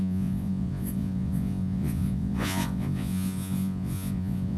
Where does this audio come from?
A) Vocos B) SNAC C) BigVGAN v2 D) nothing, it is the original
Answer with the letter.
A